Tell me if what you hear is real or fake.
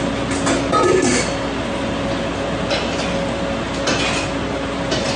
real